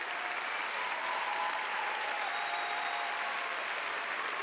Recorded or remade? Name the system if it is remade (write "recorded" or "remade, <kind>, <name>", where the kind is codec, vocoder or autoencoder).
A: recorded